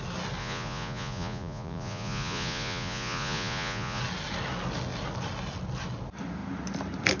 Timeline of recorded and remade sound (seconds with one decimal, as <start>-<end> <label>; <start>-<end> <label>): 0.0-0.4 recorded; 0.4-4.0 remade; 4.0-7.2 recorded